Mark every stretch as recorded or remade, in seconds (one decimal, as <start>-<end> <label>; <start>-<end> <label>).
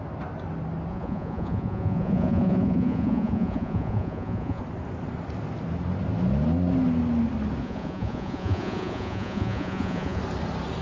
0.0-0.9 recorded; 0.9-4.6 remade; 4.6-7.6 recorded; 7.6-10.2 remade; 10.2-10.8 recorded